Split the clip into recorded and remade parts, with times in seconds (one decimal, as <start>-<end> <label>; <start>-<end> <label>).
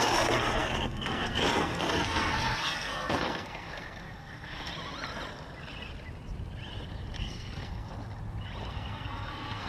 0.0-4.7 remade; 4.7-7.2 recorded; 7.2-7.9 remade; 7.9-8.7 recorded; 8.7-9.7 remade